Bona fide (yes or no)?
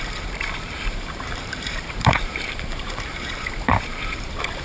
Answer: no